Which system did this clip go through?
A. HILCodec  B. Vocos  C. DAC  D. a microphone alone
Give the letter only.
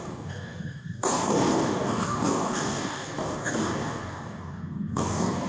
C